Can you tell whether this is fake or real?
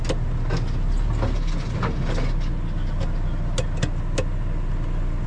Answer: real